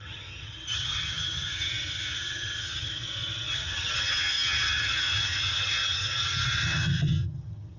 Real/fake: fake